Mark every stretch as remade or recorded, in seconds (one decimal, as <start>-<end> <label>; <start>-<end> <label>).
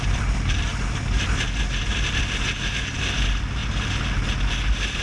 0.0-0.7 remade; 0.7-3.1 recorded; 3.1-3.6 remade; 3.6-5.0 recorded